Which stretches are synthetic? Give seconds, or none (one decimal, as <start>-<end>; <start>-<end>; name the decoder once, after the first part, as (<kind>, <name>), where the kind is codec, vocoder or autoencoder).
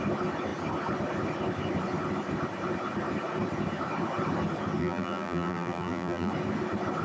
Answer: 4.8-6.3 (vocoder, BigVGAN v2)